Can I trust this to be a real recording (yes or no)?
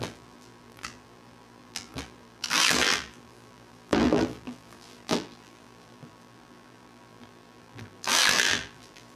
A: no